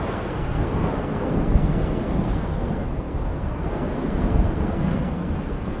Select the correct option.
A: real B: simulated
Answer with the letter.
B